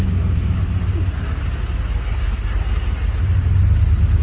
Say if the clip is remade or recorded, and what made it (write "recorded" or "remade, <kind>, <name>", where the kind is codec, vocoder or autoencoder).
recorded